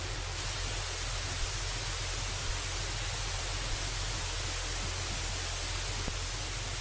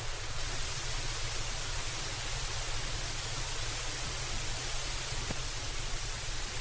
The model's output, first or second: second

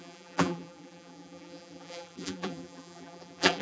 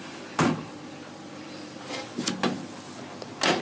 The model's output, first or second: first